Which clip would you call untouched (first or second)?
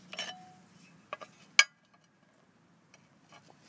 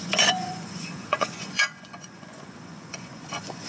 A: first